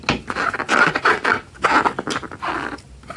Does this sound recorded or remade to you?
recorded